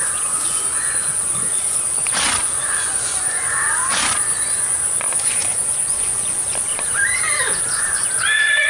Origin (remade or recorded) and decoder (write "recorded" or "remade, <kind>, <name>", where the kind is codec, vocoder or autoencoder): remade, vocoder, Vocos